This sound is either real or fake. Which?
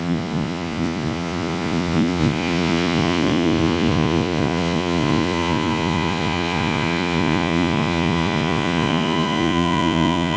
fake